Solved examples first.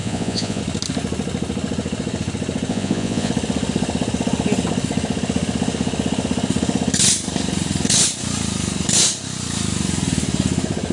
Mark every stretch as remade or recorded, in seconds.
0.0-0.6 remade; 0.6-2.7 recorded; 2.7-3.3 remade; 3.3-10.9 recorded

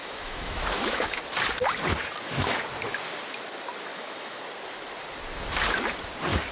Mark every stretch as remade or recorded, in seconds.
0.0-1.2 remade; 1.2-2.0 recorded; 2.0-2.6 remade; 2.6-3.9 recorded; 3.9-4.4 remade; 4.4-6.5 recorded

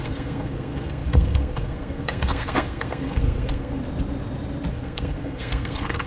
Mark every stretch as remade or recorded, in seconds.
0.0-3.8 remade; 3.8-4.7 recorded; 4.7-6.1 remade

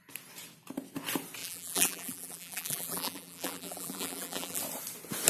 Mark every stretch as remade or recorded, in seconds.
0.0-1.4 recorded; 1.4-4.6 remade; 4.6-5.3 recorded